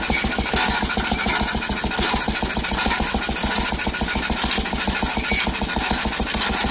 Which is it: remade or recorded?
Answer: recorded